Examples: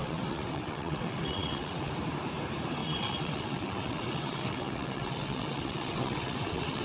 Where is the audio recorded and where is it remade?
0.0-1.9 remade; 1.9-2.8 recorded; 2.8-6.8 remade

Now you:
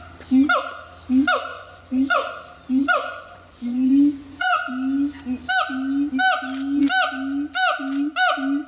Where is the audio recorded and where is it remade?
0.0-1.5 recorded; 1.5-2.3 remade; 2.3-2.8 recorded; 2.8-4.7 remade; 4.7-8.7 recorded

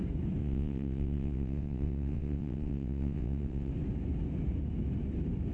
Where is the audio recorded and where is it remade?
0.0-0.4 recorded; 0.4-3.7 remade; 3.7-5.5 recorded

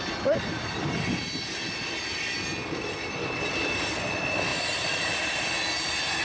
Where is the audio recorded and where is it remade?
0.0-4.5 recorded; 4.5-5.4 remade; 5.4-6.2 recorded

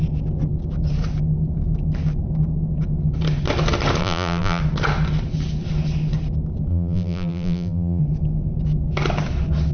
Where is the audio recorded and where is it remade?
0.0-4.0 recorded; 4.0-4.6 remade; 4.6-6.7 recorded; 6.7-8.0 remade; 8.0-9.7 recorded

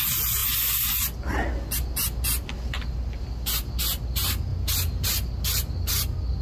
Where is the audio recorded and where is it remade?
0.0-6.4 recorded